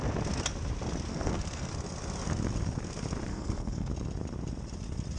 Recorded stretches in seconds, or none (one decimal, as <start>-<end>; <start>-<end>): 0.0-1.1; 1.7-3.3; 3.9-5.2